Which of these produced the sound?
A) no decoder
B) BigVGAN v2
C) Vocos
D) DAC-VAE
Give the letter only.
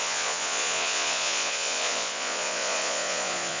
C